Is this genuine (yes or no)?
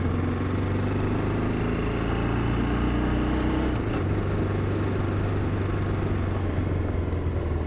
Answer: yes